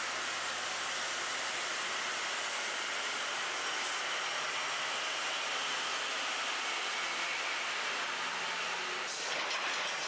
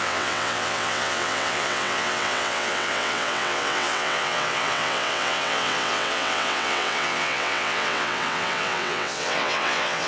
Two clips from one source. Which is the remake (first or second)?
second